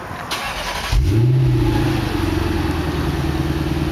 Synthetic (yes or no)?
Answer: no